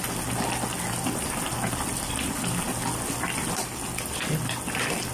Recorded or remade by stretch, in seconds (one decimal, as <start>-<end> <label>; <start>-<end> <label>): 0.0-5.1 recorded